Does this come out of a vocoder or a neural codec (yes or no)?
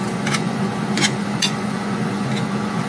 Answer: yes